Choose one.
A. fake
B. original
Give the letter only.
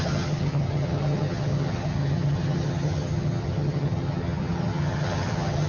A